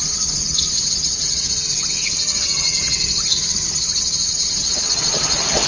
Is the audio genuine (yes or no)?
no